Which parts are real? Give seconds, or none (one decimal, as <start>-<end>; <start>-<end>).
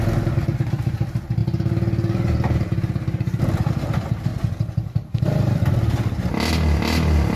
0.0-4.3; 5.6-7.4